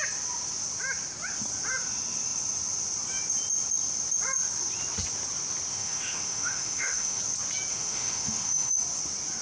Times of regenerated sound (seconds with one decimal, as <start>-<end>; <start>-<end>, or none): 5.7-7.2; 7.7-8.7